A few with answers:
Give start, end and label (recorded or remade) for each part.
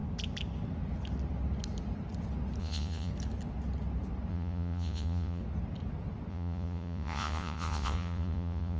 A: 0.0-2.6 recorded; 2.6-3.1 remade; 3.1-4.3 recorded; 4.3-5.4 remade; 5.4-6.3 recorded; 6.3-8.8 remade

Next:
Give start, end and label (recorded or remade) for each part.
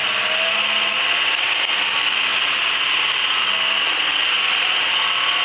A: 0.0-5.4 recorded